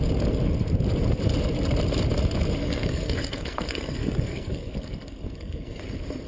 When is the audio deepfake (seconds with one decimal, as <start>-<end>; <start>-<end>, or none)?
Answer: 2.6-5.8